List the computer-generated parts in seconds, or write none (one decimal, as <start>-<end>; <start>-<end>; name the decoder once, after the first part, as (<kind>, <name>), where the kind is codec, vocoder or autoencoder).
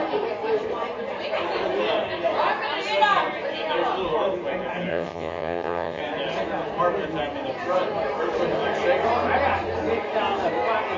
4.9-6.0 (vocoder, HiFi-GAN)